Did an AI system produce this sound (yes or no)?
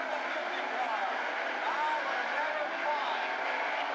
no